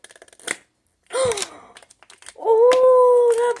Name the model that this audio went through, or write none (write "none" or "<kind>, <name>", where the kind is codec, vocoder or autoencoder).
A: none